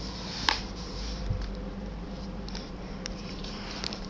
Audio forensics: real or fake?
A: fake